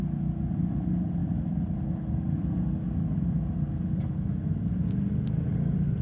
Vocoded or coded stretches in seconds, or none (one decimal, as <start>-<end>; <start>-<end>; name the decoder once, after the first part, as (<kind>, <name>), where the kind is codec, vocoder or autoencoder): none